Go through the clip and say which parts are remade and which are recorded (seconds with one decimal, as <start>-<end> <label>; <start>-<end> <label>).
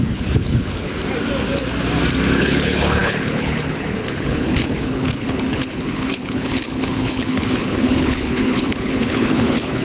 0.0-0.9 remade; 0.9-2.4 recorded; 2.4-9.8 remade